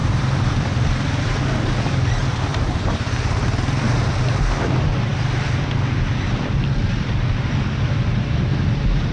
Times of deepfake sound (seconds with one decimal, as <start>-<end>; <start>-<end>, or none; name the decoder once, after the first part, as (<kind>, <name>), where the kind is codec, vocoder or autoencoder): 0.0-1.4 (vocoder, BigVGAN v2); 2.5-4.1